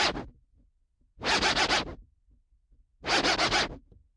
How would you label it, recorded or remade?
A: recorded